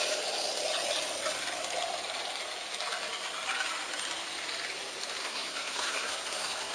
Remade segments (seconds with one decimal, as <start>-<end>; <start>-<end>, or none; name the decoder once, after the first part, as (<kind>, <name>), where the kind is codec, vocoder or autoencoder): 5.2-6.7 (codec, SNAC)